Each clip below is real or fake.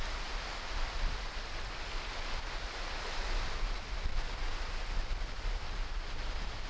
real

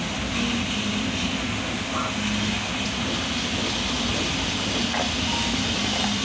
real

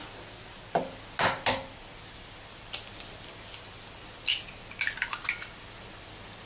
real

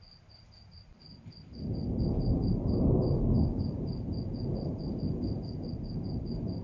real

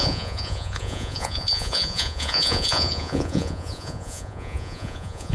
fake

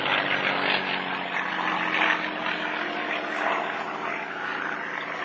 real